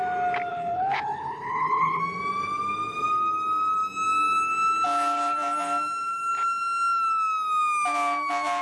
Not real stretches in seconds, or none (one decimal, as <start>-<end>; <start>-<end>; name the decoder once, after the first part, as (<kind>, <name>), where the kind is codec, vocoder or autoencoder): 0.5-2.0 (codec, HILCodec)